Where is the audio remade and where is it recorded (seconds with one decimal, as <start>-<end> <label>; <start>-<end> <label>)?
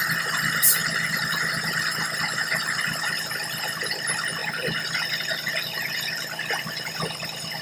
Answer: 0.0-7.6 recorded